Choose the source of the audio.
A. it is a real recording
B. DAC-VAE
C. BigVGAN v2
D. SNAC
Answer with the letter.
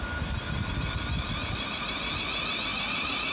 A